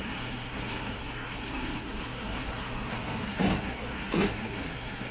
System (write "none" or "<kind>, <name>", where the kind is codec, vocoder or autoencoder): codec, SNAC